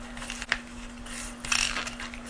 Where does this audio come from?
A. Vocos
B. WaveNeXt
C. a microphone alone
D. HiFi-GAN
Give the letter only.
C